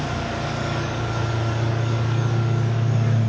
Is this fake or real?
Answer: fake